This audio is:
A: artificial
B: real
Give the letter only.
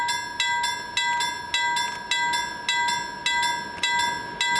B